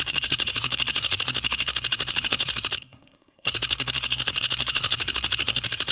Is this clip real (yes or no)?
no